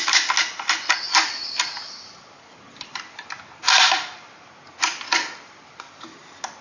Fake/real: real